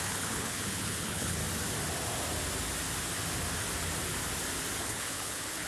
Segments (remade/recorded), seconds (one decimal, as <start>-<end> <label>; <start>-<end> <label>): 0.0-1.4 remade; 1.4-4.8 recorded; 4.8-5.7 remade